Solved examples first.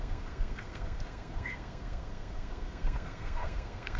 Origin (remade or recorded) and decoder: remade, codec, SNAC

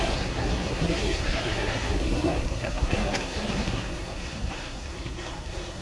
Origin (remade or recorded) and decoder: remade, codec, SNAC